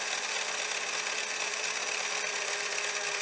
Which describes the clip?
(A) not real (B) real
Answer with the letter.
B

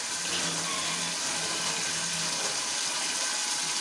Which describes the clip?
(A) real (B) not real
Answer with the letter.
A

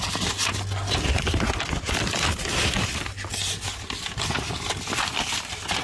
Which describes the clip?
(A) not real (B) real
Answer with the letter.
B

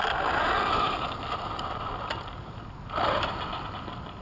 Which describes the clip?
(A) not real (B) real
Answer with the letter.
B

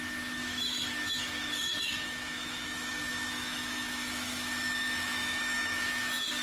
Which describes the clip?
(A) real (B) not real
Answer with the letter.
B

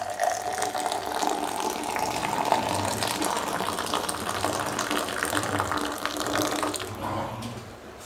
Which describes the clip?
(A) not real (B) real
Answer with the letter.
B